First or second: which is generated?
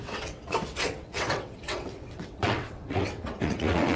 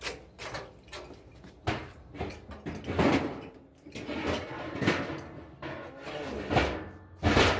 first